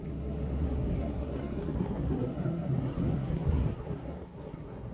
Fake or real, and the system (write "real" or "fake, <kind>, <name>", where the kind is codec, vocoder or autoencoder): fake, codec, SNAC